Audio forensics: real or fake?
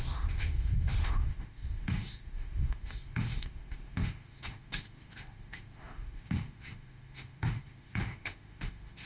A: fake